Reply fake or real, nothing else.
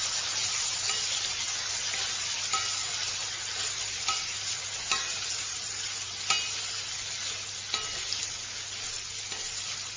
real